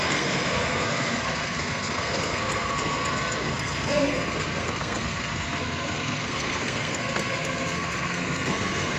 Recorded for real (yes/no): no